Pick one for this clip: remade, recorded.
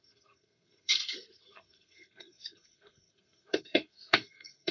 remade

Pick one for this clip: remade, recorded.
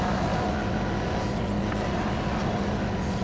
recorded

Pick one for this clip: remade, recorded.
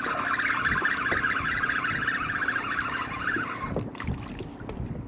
recorded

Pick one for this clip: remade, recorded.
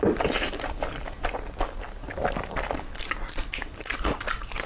recorded